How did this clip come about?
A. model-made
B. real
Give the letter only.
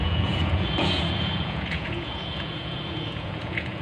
A